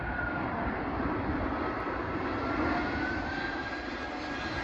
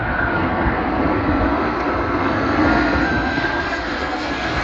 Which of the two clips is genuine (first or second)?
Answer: first